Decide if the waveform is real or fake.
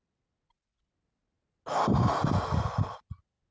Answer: real